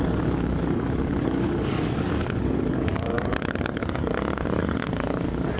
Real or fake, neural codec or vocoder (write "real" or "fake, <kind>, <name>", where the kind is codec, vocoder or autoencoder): fake, codec, DAC